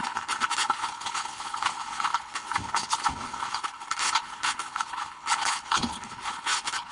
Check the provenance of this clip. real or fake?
fake